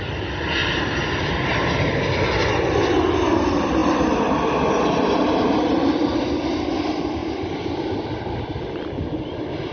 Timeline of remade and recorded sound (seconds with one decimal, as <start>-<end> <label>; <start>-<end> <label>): 0.0-0.6 recorded; 0.6-2.3 remade; 2.3-7.2 recorded; 7.2-8.4 remade; 8.4-9.7 recorded